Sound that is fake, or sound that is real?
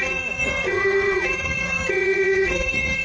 fake